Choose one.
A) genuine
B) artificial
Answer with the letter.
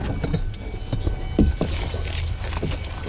A